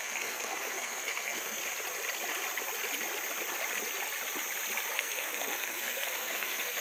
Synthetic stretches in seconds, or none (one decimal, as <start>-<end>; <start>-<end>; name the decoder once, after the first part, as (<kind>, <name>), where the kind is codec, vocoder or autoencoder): 0.0-1.6 (codec, SNAC); 4.9-6.8